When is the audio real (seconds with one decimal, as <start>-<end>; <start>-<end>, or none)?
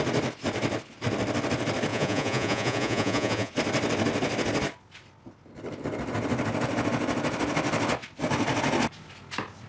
0.0-1.9; 3.5-9.7